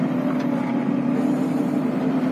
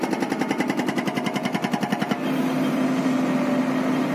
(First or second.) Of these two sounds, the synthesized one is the first